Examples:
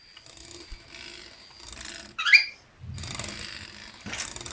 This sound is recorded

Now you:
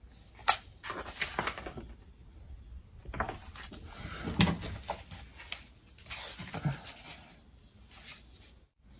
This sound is recorded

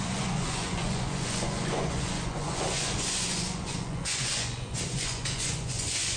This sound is remade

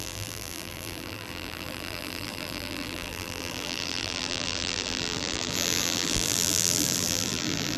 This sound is remade